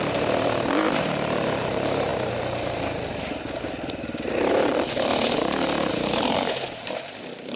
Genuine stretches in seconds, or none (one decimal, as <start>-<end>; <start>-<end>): 2.1-4.5; 5.1-5.9